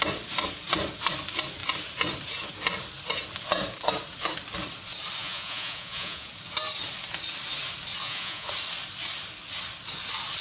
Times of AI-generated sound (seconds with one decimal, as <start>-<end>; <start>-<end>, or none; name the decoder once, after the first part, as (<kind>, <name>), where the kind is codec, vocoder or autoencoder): 5.2-6.3 (vocoder, Vocos); 8.0-8.5